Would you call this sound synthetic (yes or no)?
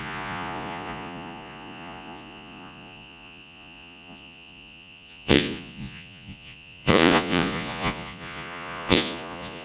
yes